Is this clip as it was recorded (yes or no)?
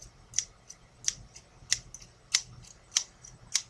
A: yes